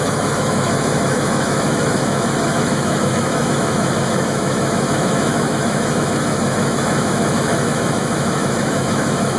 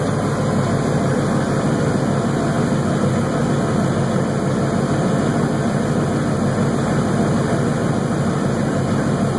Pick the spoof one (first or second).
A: first